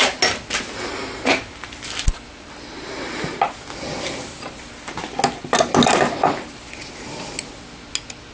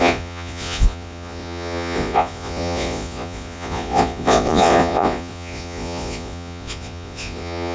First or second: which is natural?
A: first